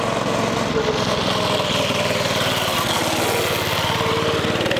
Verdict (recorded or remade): recorded